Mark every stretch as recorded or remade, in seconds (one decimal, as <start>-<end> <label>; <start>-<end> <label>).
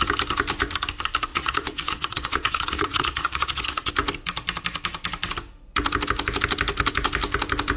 0.0-1.3 recorded; 1.3-3.9 remade; 3.9-7.8 recorded